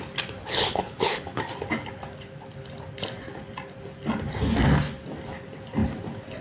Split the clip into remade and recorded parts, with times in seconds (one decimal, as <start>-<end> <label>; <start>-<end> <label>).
0.0-0.4 recorded; 0.4-1.4 remade; 1.4-6.4 recorded